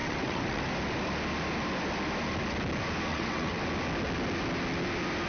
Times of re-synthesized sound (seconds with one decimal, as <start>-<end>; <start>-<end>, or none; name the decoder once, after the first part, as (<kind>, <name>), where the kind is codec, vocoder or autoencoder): 0.0-0.6 (vocoder, WaveNeXt); 3.1-3.6